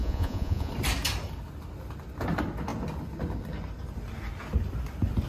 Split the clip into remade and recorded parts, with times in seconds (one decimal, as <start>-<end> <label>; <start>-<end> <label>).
0.0-0.7 remade; 0.7-5.3 recorded